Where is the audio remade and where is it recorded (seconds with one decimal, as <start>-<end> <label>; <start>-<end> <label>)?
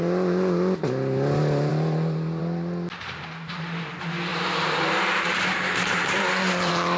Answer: 0.0-4.3 recorded; 4.3-7.0 remade